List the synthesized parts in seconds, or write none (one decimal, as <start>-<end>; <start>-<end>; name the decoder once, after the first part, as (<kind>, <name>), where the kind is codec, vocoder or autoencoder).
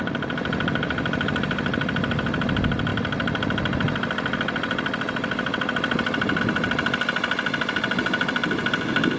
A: none